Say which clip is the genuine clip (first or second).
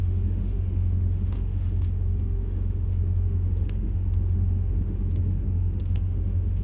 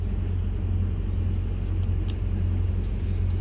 second